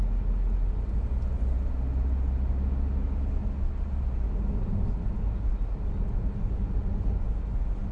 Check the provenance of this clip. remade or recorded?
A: recorded